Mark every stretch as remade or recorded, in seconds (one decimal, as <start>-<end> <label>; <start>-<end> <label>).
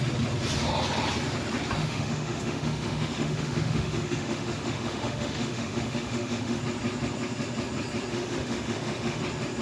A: 0.0-1.8 recorded; 1.8-6.6 remade; 6.6-8.1 recorded; 8.1-9.2 remade; 9.2-9.6 recorded